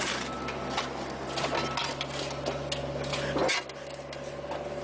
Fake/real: real